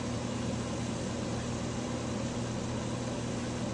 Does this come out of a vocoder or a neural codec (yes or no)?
no